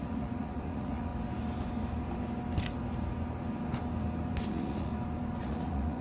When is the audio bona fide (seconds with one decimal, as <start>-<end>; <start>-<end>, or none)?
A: 1.1-4.5; 4.9-5.4